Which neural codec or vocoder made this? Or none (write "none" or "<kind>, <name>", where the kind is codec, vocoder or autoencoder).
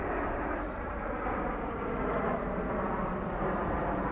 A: none